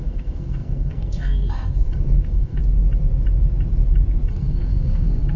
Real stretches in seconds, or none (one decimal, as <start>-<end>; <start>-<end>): 2.6-4.3